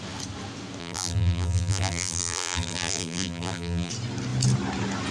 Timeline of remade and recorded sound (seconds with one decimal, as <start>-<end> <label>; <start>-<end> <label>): 0.0-0.8 recorded; 0.8-3.9 remade; 3.9-5.1 recorded